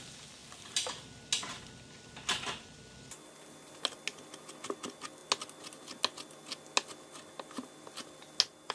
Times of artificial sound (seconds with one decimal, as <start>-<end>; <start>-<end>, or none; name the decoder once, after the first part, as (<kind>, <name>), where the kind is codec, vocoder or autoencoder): none